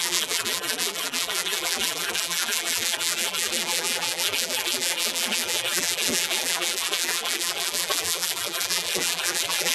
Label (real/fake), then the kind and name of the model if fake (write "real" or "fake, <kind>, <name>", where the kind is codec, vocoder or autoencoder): fake, vocoder, BigVGAN v2